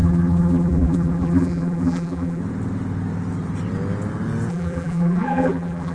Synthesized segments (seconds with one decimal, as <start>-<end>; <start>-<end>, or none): 0.0-2.4; 4.5-5.9

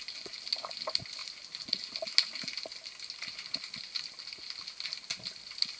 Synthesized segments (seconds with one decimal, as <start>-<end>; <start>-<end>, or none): none

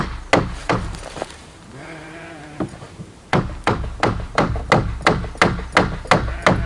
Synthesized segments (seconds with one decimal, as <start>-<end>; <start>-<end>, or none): 0.6-4.6

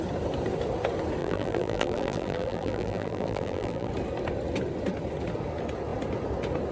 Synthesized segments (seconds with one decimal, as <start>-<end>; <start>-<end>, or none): 1.2-3.9

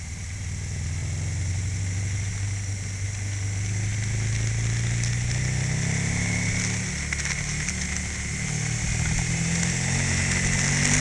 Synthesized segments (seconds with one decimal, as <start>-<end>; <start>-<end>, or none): none

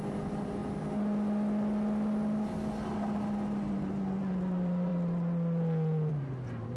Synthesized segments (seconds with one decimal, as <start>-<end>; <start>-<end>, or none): 0.0-0.6; 3.7-4.9; 6.1-6.8